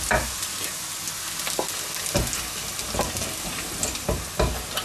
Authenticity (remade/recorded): recorded